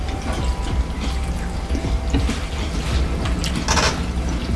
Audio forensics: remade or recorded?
recorded